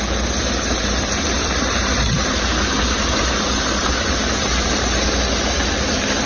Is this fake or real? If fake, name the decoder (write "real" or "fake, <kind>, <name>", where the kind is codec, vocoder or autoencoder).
real